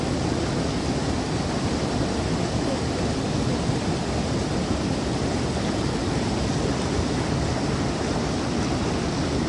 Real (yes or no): yes